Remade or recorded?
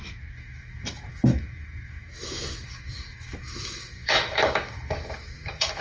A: remade